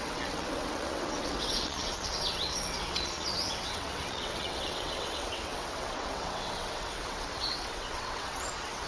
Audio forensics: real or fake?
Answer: fake